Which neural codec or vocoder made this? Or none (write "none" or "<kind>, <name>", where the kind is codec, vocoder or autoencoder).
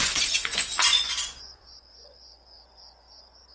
vocoder, Vocos